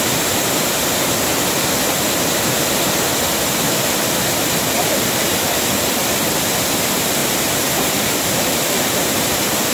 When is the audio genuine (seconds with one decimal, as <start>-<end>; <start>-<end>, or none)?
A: 0.0-7.2